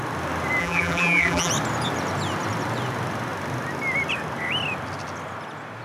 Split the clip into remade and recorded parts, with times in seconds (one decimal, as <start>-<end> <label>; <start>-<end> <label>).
0.0-0.6 recorded; 0.6-1.5 remade; 1.5-5.8 recorded